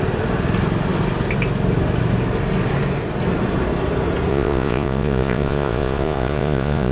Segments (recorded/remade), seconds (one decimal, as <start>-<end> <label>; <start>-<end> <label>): 0.0-4.3 recorded; 4.3-6.9 remade